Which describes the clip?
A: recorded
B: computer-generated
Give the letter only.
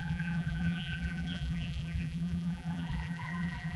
B